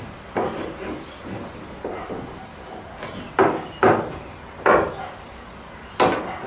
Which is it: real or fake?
real